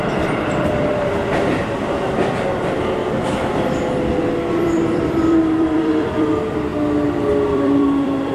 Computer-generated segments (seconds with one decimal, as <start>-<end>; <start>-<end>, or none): 0.0-3.0; 4.5-6.7; 7.5-8.3